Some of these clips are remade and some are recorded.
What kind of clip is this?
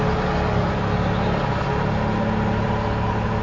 recorded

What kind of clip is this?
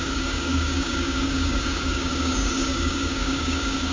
remade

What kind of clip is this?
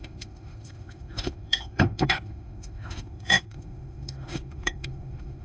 remade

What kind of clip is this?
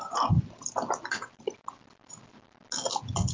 recorded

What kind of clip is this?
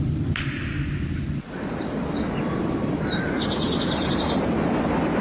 recorded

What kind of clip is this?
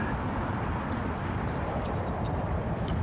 remade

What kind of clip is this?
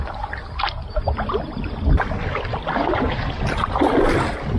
recorded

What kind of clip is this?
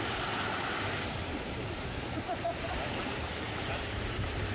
remade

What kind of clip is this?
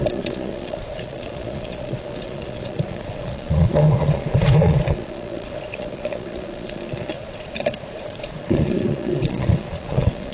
remade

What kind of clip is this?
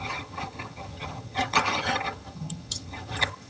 remade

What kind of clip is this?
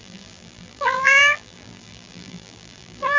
remade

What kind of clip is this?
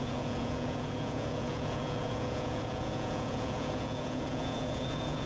remade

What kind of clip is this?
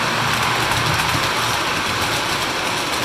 recorded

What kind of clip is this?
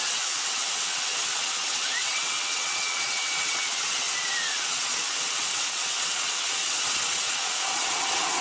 remade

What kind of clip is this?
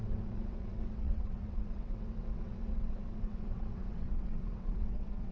remade